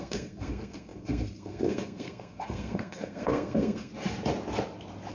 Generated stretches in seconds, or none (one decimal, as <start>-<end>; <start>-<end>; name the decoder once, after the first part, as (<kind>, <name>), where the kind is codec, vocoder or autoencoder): 0.0-3.9 (codec, SNAC)